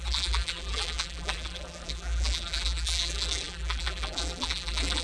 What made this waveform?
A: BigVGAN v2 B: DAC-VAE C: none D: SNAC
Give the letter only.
A